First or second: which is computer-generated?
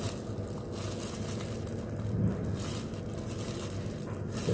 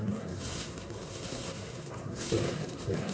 second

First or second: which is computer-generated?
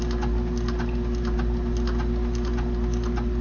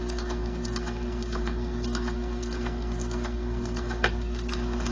second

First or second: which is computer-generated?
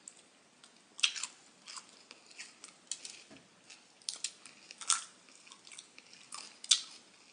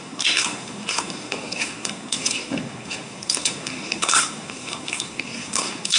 second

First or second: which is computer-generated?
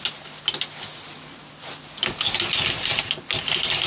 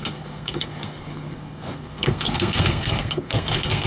second